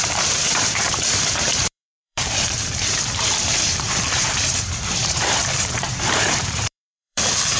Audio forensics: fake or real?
fake